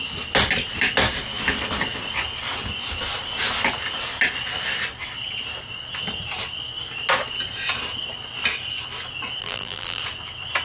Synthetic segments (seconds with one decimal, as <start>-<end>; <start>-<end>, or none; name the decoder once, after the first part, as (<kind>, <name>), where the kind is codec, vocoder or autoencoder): 9.4-10.0 (vocoder, BigVGAN v2)

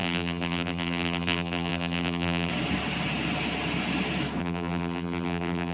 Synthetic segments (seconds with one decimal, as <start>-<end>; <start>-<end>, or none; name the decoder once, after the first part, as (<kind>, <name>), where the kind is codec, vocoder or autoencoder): 0.0-2.5 (vocoder, BigVGAN v2); 4.4-5.7

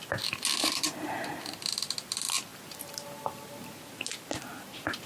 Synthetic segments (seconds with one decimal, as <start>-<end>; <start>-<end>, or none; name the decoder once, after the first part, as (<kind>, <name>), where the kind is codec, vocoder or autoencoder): 0.6-1.4 (vocoder, BigVGAN v2)